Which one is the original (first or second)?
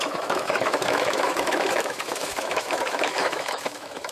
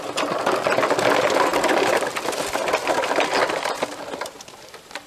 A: second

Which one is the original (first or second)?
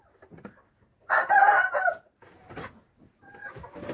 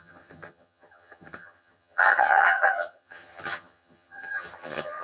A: first